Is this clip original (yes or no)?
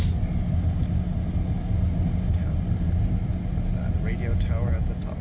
yes